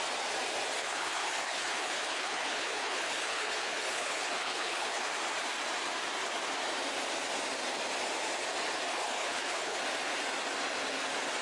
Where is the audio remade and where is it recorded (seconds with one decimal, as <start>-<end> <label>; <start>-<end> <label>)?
0.0-0.8 recorded; 0.8-5.1 remade; 5.1-8.9 recorded; 8.9-9.8 remade; 9.8-11.4 recorded